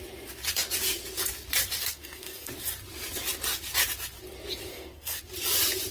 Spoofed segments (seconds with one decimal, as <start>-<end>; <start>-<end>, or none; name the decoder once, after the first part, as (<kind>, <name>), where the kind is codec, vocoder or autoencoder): 1.9-2.5 (codec, SNAC); 4.7-5.2